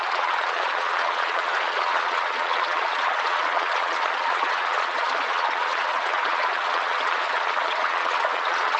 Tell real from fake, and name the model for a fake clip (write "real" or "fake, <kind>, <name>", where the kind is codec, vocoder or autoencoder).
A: fake, vocoder, Vocos